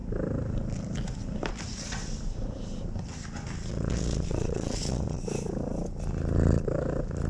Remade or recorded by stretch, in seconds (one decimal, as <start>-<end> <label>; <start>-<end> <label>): 0.0-3.7 recorded; 3.7-5.2 remade; 5.2-7.3 recorded